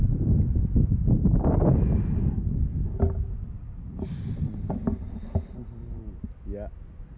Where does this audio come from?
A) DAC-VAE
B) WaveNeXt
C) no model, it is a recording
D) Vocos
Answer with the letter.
C